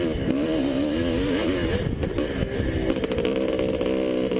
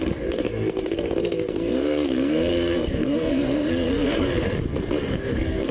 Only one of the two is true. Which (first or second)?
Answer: first